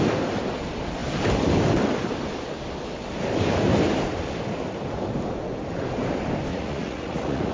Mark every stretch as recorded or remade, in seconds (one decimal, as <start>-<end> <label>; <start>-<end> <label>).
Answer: 0.0-6.5 recorded; 6.5-7.5 remade